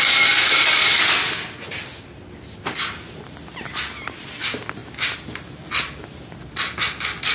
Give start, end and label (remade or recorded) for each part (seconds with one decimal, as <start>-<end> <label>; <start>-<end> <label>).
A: 0.0-7.3 recorded